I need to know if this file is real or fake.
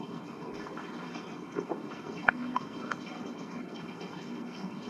fake